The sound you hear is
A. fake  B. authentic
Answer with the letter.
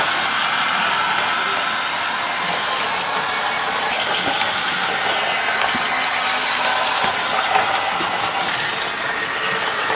B